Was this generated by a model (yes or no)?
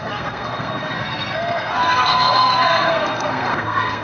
yes